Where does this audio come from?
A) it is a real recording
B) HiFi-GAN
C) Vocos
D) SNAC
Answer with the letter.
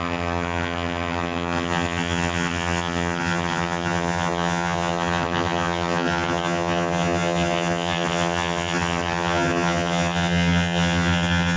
B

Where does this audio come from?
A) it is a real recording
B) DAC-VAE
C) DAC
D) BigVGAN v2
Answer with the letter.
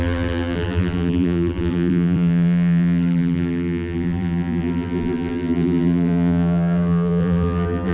D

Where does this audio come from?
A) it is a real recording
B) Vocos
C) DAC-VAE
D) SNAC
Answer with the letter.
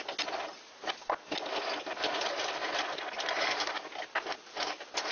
A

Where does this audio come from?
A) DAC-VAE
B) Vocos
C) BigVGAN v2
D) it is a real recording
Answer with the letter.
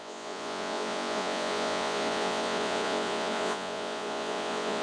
B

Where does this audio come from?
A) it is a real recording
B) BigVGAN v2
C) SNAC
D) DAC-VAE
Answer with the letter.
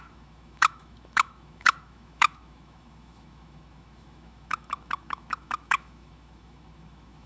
D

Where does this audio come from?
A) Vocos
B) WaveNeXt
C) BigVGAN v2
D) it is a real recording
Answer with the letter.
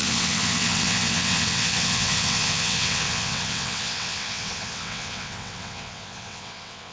B